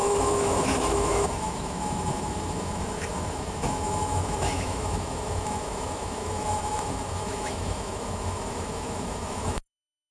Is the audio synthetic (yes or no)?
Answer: yes